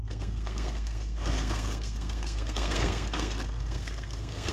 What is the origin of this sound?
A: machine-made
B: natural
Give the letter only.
A